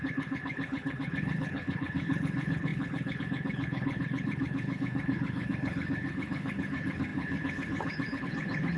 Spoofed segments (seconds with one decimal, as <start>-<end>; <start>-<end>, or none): 0.0-8.8